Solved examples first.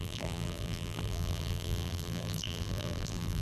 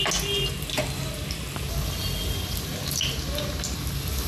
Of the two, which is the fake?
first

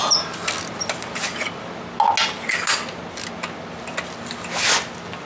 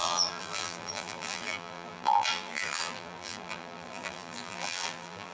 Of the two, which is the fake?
second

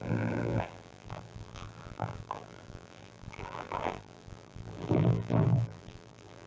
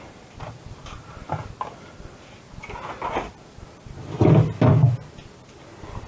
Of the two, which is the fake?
first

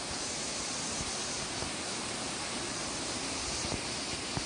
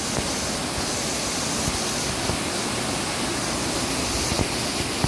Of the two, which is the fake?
first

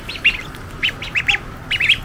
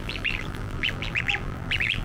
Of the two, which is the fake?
second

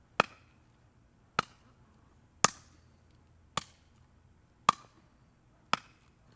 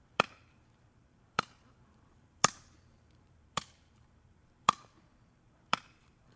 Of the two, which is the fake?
second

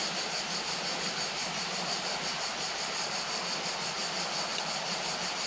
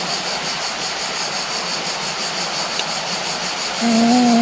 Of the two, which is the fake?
first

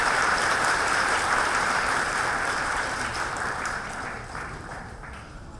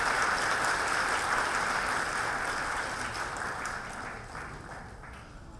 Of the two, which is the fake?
first